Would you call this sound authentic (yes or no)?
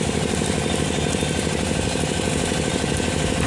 yes